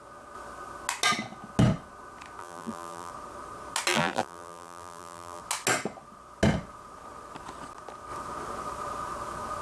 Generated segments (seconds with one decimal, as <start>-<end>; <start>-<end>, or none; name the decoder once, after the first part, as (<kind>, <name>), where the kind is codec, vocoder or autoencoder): 2.4-3.1 (vocoder, BigVGAN v2); 3.9-5.4